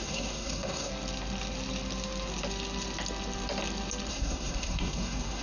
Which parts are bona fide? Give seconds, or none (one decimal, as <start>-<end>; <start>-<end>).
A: 0.9-4.1